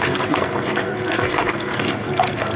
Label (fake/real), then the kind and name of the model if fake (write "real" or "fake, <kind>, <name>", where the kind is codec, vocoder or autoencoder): fake, codec, SNAC